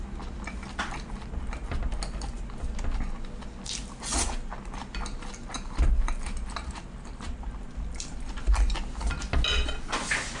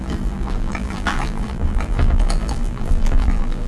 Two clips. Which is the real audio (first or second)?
first